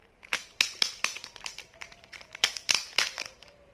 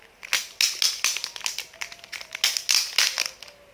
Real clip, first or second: second